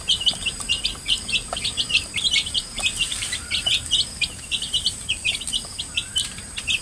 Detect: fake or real fake